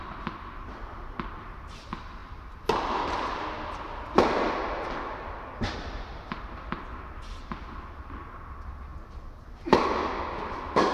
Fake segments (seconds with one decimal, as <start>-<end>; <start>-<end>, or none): 6.1-7.6